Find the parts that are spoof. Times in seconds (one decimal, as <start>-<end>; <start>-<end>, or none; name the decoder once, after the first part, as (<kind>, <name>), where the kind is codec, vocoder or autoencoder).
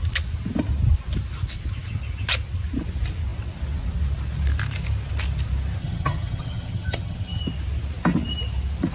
5.8-7.4 (vocoder, HiFi-GAN)